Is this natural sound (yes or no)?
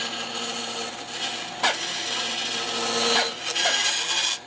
yes